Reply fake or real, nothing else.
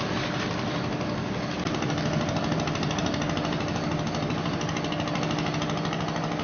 real